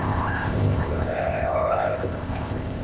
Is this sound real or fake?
fake